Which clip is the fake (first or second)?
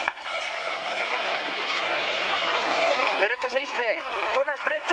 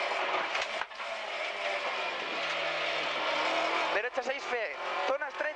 first